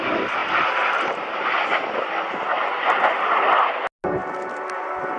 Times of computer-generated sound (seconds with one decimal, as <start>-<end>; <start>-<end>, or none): none